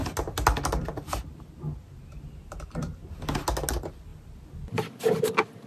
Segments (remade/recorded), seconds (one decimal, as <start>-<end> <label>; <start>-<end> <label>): 0.0-5.7 recorded